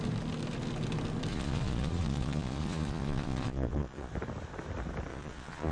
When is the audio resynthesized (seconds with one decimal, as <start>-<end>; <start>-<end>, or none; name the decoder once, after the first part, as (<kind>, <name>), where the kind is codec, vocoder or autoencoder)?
1.3-4.1 (vocoder, Vocos); 5.1-5.7